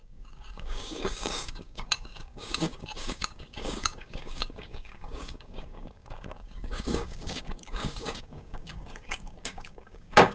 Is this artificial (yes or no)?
yes